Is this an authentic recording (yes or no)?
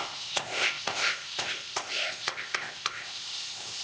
no